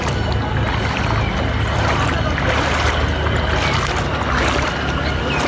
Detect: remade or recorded recorded